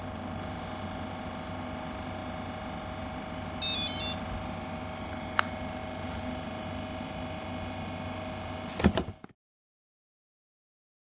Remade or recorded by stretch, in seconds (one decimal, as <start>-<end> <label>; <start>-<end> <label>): 0.0-11.1 recorded